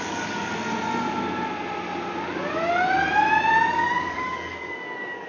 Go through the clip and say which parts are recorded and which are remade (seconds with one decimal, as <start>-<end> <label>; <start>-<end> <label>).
0.0-0.5 remade; 0.5-3.7 recorded; 3.7-5.3 remade